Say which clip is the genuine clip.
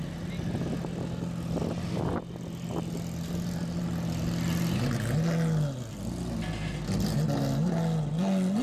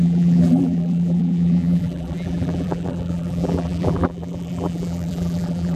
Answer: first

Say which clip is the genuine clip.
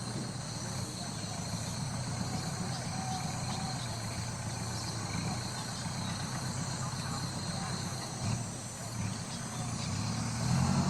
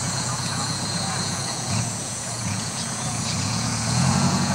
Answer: first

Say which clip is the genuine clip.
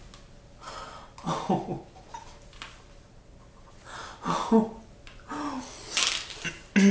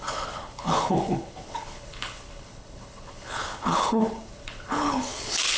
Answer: first